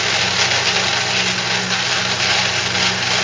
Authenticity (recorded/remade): recorded